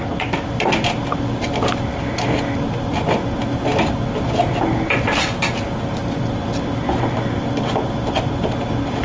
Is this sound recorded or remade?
recorded